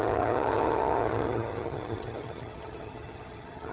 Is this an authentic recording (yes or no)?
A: no